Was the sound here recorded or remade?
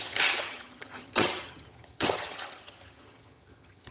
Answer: remade